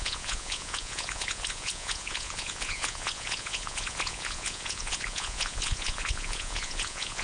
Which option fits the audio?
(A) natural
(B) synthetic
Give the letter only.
B